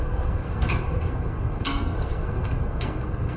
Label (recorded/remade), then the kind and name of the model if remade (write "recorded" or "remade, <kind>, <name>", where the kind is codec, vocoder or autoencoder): remade, codec, SNAC